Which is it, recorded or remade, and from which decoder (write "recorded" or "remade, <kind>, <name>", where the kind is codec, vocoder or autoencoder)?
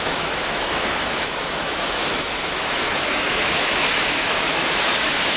remade, autoencoder, DAC-VAE